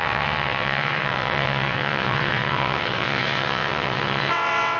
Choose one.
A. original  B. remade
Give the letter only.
B